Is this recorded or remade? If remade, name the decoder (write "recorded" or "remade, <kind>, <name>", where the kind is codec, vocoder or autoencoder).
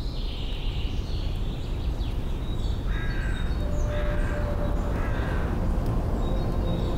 recorded